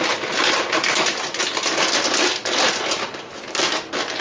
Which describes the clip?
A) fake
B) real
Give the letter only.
B